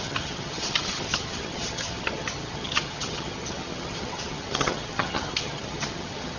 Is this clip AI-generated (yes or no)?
yes